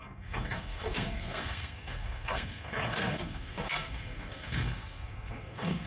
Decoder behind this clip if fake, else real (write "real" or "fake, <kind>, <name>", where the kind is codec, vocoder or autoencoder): fake, codec, SNAC